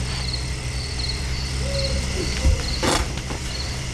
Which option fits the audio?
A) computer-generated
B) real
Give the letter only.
B